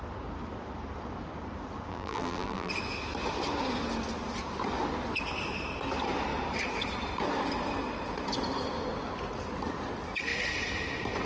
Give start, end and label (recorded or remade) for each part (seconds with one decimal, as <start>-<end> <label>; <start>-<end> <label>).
0.0-1.9 recorded; 1.9-2.7 remade; 2.7-11.3 recorded